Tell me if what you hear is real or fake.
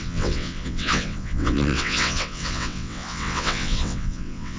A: fake